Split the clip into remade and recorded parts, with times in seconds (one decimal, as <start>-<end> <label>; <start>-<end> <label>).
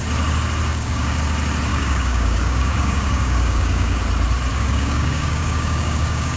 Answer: 0.0-0.7 recorded; 0.7-1.2 remade; 1.2-1.7 recorded; 1.7-4.0 remade; 4.0-4.5 recorded; 4.5-6.4 remade